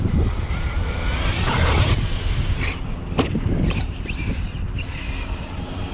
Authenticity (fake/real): fake